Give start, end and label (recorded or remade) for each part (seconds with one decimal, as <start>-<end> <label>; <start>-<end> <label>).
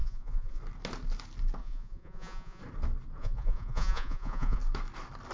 0.0-0.6 remade; 0.6-1.6 recorded; 1.6-2.6 remade; 2.6-3.2 recorded; 3.2-4.6 remade; 4.6-5.3 recorded